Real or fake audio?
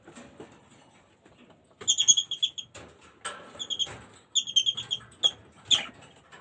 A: real